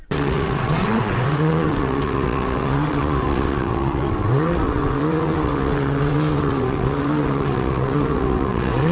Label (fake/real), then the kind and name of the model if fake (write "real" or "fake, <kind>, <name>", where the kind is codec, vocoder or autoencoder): fake, vocoder, WaveNeXt